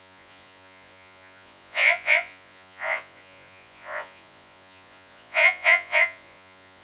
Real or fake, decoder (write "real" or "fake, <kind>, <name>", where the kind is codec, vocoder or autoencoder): fake, vocoder, Vocos